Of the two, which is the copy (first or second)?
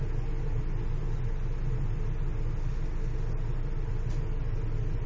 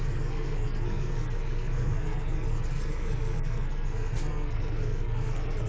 second